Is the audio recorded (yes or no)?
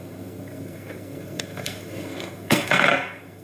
no